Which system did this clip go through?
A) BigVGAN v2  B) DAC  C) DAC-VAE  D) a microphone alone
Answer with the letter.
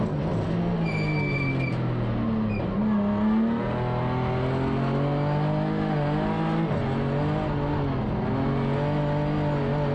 D